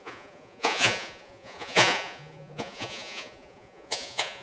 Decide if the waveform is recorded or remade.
remade